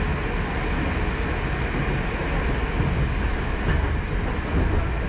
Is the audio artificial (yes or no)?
no